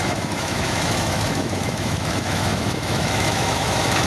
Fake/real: fake